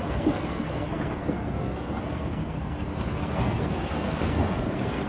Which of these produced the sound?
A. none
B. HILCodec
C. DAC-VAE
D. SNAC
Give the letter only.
D